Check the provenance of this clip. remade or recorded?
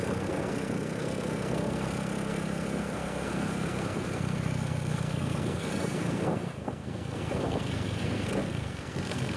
remade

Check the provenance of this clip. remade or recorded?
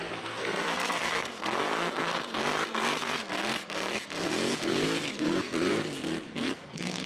remade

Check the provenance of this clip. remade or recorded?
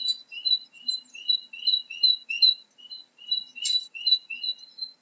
recorded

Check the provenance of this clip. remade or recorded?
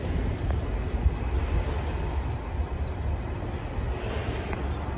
recorded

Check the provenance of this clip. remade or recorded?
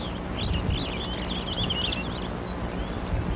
recorded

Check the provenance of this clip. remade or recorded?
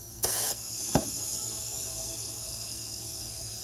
remade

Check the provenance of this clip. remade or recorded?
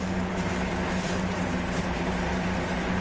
recorded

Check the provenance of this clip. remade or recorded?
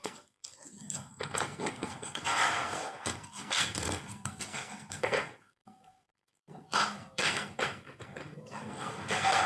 remade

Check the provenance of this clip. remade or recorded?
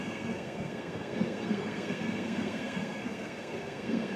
remade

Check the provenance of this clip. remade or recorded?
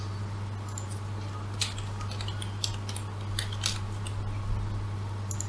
recorded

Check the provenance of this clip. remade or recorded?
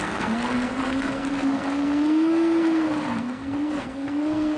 remade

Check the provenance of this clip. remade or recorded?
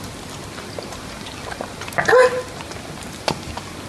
recorded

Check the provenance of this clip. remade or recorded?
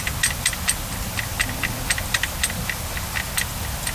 recorded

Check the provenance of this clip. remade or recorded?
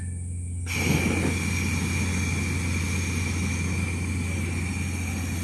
recorded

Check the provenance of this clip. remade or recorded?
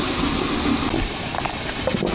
recorded